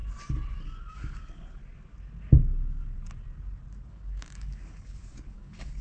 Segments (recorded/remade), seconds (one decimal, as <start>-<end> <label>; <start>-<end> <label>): 0.0-0.9 recorded; 0.9-1.6 remade; 1.6-3.9 recorded; 3.9-5.8 remade